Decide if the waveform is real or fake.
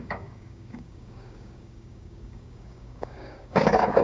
fake